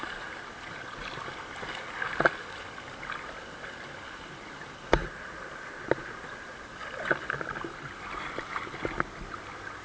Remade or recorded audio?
recorded